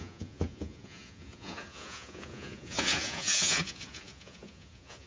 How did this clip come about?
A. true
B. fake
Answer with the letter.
B